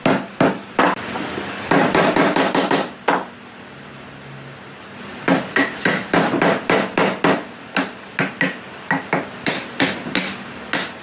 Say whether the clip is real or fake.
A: real